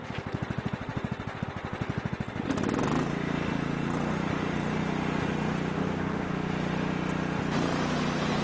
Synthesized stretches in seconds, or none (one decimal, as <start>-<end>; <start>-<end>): 5.8-6.3